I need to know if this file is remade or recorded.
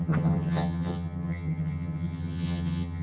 remade